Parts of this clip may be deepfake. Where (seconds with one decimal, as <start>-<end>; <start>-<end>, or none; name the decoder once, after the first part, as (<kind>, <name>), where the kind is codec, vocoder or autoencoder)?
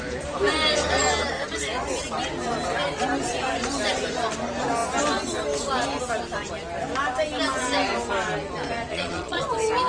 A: 8.9-9.5 (vocoder, Vocos)